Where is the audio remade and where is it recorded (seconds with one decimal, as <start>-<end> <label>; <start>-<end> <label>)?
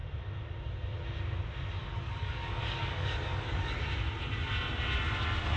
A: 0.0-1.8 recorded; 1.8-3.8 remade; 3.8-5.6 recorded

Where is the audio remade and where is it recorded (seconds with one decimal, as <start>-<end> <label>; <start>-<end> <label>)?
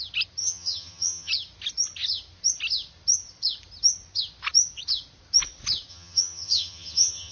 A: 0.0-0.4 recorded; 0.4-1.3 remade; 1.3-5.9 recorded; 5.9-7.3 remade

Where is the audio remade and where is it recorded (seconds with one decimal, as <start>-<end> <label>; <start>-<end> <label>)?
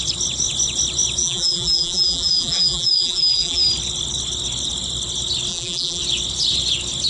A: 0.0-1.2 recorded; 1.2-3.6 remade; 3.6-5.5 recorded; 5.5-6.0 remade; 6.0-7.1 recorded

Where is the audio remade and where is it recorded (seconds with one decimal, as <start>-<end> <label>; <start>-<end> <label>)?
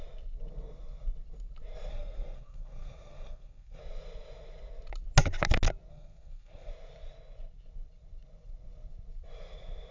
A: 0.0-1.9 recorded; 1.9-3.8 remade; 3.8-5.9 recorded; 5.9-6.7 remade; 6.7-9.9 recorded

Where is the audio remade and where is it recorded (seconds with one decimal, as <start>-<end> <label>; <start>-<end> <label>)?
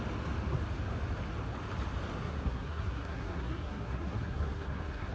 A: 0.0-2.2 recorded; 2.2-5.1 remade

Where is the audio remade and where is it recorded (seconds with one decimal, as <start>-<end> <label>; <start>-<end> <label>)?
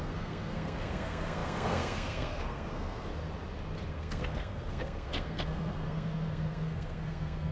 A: 0.0-3.1 remade; 3.1-3.9 recorded; 3.9-7.5 remade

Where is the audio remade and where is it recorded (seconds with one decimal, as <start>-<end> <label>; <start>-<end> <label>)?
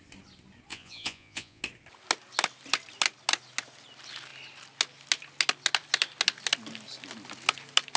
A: 0.0-0.7 recorded; 0.7-1.6 remade; 1.6-8.0 recorded